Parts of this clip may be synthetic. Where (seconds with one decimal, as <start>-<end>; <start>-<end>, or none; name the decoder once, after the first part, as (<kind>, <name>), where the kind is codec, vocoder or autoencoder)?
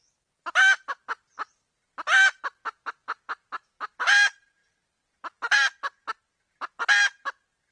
none